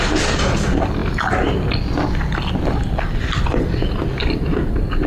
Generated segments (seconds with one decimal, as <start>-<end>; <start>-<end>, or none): none